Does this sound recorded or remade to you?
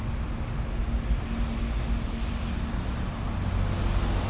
recorded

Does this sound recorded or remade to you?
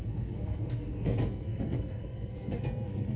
remade